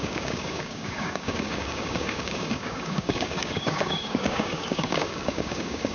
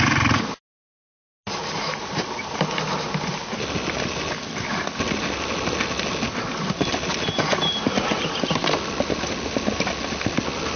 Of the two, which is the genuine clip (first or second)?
second